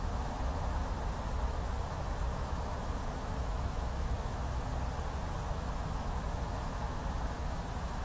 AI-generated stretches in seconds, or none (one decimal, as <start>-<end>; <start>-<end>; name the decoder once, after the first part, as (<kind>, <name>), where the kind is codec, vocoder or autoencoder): 0.0-0.8 (autoencoder, DAC-VAE); 1.8-4.7; 5.5-8.0

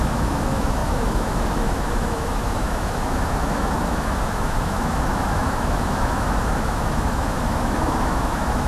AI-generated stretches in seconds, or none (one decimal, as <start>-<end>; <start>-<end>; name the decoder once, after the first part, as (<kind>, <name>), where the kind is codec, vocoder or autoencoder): 0.0-8.7 (autoencoder, DAC-VAE)

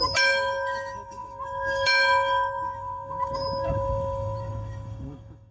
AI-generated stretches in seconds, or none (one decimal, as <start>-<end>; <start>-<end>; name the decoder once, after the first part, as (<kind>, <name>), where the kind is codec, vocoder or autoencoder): 0.0-5.5 (autoencoder, DAC-VAE)

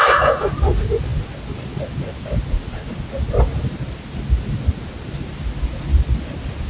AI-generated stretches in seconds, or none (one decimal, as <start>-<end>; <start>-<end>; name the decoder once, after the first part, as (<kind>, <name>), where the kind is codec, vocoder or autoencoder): 0.0-0.5 (autoencoder, DAC-VAE)

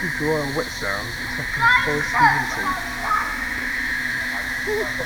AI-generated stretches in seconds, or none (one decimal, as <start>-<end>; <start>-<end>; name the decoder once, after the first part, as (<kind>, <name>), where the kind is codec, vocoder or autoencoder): 3.0-5.1 (autoencoder, DAC-VAE)